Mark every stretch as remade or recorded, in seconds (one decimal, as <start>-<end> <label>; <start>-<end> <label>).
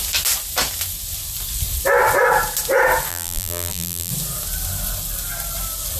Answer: 0.0-3.1 recorded; 3.1-4.1 remade; 4.1-6.0 recorded